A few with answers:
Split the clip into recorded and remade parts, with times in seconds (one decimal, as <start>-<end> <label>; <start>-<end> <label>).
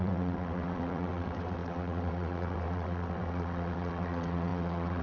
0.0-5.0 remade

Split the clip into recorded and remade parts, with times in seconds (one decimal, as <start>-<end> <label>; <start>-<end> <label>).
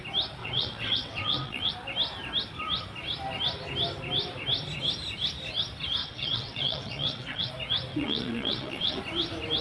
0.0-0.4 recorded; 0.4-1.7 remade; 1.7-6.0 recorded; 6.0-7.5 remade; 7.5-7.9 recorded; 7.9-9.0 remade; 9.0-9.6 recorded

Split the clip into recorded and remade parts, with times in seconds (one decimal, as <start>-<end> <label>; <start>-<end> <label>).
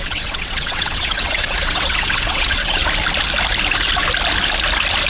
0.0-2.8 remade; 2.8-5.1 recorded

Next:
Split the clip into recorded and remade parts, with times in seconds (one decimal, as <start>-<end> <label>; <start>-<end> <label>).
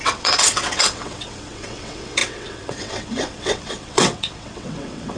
0.0-5.2 remade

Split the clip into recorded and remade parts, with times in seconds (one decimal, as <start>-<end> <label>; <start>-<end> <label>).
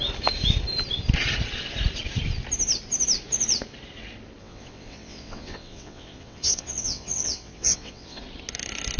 0.0-4.4 recorded; 4.4-8.2 remade; 8.2-9.0 recorded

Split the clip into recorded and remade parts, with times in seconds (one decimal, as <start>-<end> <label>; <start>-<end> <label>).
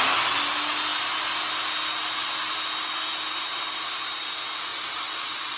0.0-4.7 recorded; 4.7-5.6 remade